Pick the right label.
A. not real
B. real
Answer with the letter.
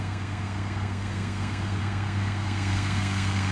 A